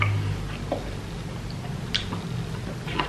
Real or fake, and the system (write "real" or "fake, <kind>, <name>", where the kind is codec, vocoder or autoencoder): real